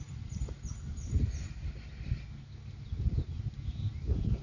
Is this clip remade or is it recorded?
recorded